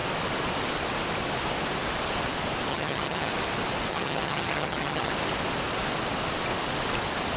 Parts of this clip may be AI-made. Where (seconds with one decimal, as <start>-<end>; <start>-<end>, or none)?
2.7-3.3; 3.9-5.1